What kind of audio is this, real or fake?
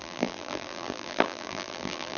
fake